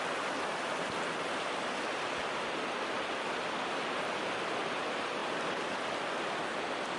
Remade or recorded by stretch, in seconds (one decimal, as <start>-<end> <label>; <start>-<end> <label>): 0.0-7.0 recorded